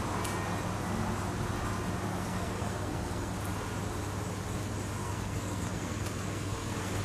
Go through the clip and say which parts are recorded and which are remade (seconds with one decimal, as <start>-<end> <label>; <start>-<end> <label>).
0.0-2.1 recorded; 2.1-3.3 remade; 3.3-5.0 recorded; 5.0-7.0 remade